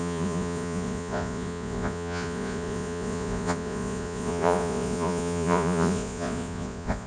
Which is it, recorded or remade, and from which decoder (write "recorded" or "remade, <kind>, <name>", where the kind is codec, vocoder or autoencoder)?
remade, vocoder, Vocos